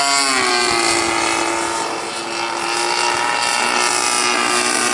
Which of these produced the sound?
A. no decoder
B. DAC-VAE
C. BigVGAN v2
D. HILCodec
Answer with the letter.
A